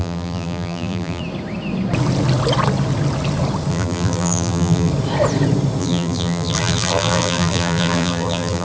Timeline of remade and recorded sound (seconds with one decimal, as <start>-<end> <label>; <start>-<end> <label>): 0.0-1.2 remade; 1.2-3.7 recorded; 3.7-4.9 remade; 4.9-5.8 recorded; 5.8-8.6 remade